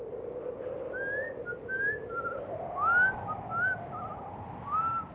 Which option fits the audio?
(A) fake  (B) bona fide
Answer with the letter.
B